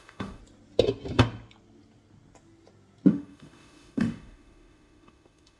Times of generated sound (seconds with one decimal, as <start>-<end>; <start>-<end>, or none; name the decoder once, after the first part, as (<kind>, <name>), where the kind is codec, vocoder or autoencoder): 0.0-0.4 (autoencoder, DAC-VAE); 3.1-5.6